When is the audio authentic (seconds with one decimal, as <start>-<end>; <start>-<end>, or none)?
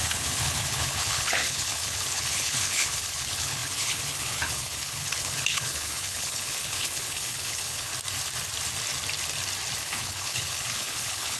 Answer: 7.9-9.8